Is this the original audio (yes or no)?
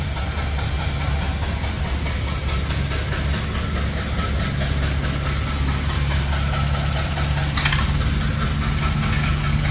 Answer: yes